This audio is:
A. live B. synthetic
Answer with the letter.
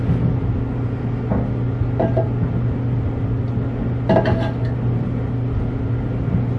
A